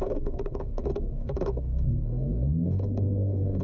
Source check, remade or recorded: remade